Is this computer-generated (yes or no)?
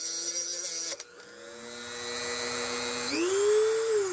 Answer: no